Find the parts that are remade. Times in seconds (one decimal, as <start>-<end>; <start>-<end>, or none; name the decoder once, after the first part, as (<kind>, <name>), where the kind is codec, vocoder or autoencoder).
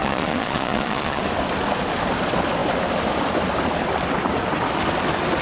0.0-1.2 (vocoder, Vocos)